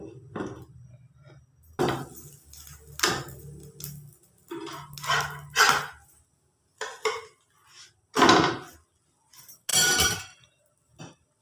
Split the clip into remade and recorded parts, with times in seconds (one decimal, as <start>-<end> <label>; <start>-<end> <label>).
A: 0.0-9.7 recorded; 9.7-11.0 remade; 11.0-11.4 recorded